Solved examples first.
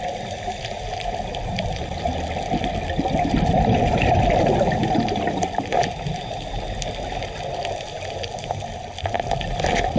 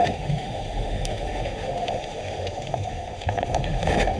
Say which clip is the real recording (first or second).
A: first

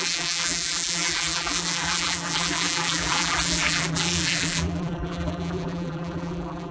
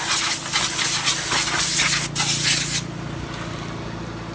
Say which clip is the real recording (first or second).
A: second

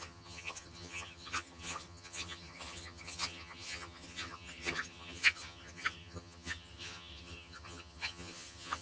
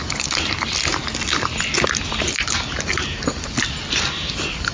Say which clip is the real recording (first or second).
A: second